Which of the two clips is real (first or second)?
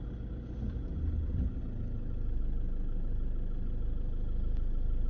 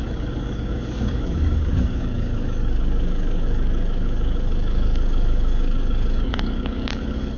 first